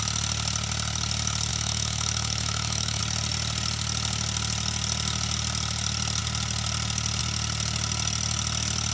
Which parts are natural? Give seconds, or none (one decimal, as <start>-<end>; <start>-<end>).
0.0-1.5; 3.0-8.9